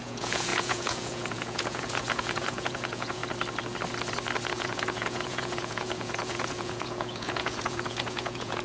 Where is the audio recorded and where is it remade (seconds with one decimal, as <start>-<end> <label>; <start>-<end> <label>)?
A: 0.0-3.2 remade; 3.2-4.5 recorded; 4.5-8.6 remade